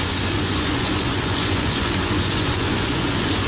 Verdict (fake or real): fake